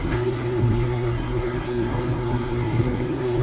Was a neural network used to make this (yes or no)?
yes